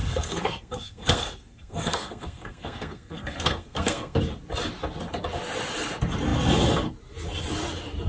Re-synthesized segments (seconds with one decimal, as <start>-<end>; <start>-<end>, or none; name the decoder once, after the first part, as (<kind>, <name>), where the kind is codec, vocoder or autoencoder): 0.0-4.2 (codec, SNAC)